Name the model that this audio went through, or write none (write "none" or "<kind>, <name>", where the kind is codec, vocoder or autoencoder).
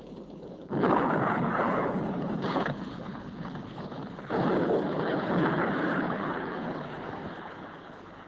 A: codec, HILCodec